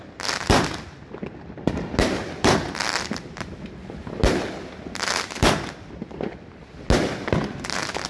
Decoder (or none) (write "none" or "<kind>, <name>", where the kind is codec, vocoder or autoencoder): none